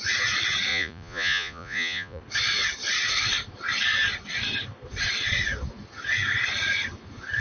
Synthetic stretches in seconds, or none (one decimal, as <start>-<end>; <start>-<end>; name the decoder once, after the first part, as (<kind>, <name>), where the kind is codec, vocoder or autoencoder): 0.7-2.2 (vocoder, Vocos)